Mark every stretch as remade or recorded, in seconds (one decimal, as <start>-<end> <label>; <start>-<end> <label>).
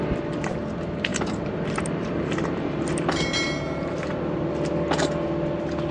0.0-1.1 recorded; 1.1-4.1 remade; 4.1-5.9 recorded